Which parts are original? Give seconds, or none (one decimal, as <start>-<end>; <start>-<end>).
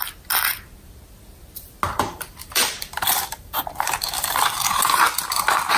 0.0-1.9; 4.4-5.8